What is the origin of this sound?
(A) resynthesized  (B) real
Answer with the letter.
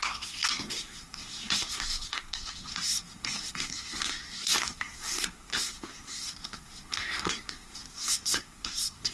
A